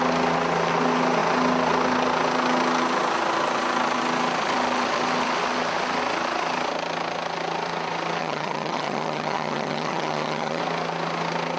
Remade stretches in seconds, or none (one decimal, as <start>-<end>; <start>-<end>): 8.2-10.6